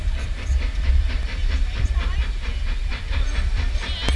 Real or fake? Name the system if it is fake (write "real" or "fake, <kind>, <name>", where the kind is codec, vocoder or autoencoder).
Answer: real